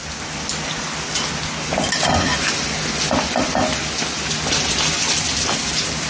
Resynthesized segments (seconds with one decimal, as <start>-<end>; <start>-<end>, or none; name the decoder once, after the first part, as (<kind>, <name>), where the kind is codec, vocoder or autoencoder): none